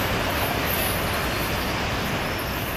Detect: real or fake real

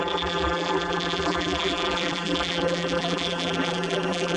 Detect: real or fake fake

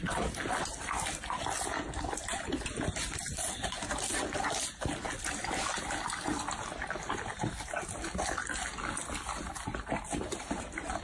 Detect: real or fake real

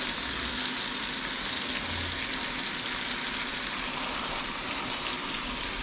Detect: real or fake real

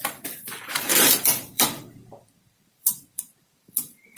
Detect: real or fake fake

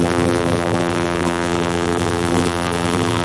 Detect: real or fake fake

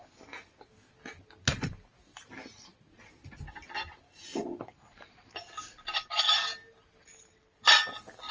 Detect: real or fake real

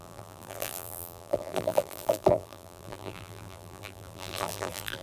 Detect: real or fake fake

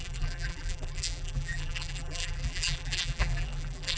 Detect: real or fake fake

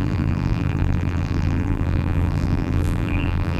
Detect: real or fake fake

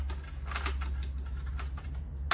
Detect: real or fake real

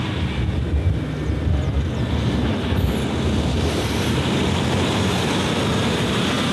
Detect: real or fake real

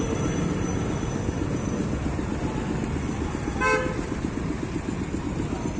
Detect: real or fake real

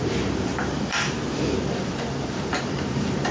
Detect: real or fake fake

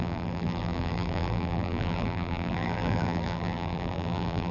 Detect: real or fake fake